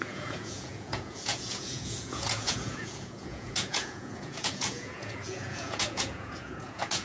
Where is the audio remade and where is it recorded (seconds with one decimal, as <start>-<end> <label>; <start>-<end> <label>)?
0.0-7.0 remade